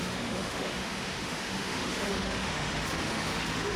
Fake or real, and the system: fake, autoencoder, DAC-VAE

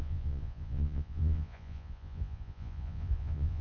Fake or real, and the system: fake, vocoder, Vocos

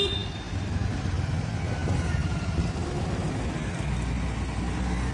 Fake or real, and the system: real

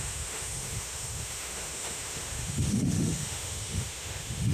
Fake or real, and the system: fake, autoencoder, DAC-VAE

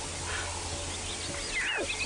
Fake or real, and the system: real